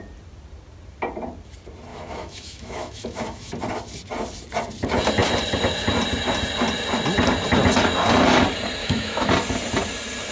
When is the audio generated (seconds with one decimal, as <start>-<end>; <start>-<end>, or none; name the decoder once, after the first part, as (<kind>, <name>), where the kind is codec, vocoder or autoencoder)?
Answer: 1.9-3.5 (autoencoder, DAC-VAE); 8.8-9.3